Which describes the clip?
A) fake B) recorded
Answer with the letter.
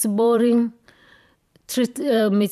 A